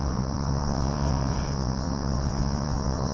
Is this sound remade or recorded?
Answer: remade